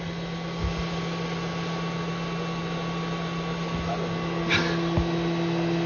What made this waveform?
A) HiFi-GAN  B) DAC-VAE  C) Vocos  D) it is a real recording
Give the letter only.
D